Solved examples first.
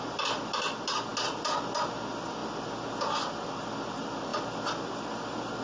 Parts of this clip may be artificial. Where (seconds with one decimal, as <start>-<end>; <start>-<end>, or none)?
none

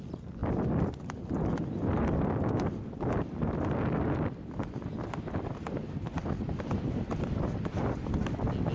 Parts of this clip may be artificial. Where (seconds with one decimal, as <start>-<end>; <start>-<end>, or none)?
none

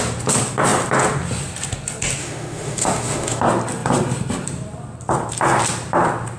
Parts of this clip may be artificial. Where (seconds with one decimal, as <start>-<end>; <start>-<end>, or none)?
2.2-3.4

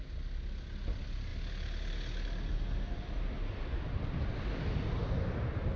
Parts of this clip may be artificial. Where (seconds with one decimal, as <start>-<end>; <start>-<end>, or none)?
none

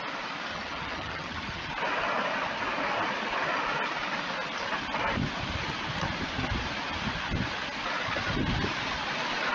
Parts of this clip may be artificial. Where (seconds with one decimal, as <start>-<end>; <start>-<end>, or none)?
0.5-1.7

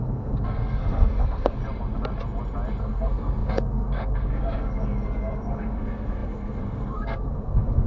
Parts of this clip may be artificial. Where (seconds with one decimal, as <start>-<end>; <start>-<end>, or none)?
0.0-1.6; 2.8-7.9